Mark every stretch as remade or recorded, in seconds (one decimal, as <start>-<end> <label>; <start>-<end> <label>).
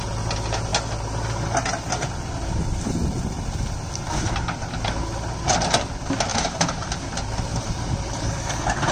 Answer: 0.0-6.3 recorded; 6.3-6.9 remade; 6.9-7.5 recorded; 7.5-8.2 remade; 8.2-8.9 recorded